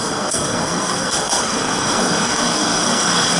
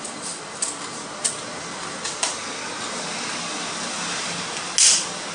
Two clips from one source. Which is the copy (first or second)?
first